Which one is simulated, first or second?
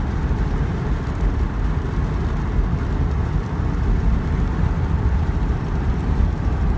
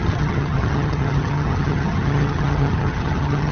second